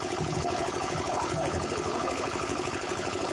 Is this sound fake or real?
fake